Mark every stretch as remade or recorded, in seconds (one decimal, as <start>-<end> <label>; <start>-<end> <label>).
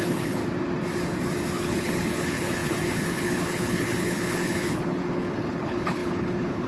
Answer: 0.0-0.4 remade; 0.4-1.6 recorded; 1.6-6.7 remade